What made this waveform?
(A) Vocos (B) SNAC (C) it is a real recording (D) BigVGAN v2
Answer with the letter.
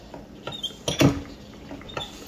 C